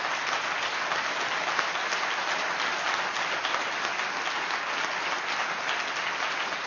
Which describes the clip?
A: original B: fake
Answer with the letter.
A